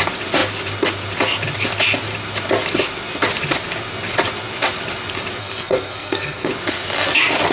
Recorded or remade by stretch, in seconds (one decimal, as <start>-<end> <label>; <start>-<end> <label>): 0.0-5.4 recorded; 5.4-6.5 remade; 6.5-7.5 recorded

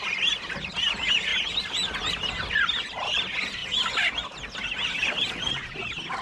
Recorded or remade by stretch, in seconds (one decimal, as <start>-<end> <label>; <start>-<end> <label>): 0.0-6.2 recorded

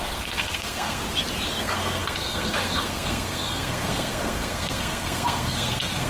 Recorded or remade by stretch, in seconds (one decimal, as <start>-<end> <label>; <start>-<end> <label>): 0.0-1.0 remade; 1.0-1.6 recorded; 1.6-6.1 remade

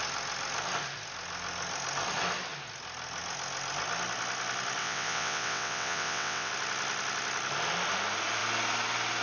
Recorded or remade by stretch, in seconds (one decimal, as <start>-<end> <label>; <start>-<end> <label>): 0.0-4.8 recorded; 4.8-6.5 remade; 6.5-9.2 recorded

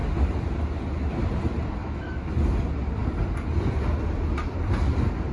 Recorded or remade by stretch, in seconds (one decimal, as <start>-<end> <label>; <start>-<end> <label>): 0.0-1.8 recorded; 1.8-2.3 remade; 2.3-5.3 recorded

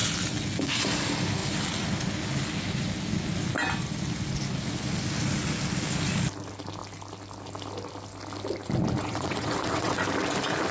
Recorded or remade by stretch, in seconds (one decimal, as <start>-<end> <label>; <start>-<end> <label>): 0.0-9.0 recorded; 9.0-10.0 remade; 10.0-10.7 recorded

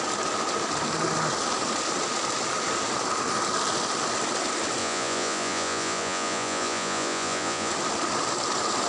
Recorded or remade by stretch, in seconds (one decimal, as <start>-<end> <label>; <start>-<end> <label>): 0.0-4.8 recorded; 4.8-7.7 remade; 7.7-8.9 recorded

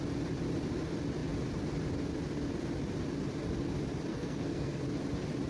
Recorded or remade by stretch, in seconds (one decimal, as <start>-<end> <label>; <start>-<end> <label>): 0.0-4.1 recorded; 4.1-4.8 remade; 4.8-5.5 recorded